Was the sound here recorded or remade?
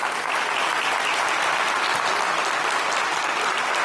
remade